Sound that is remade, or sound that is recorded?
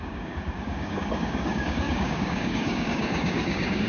remade